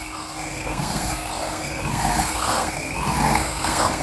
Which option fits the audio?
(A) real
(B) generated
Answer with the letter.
B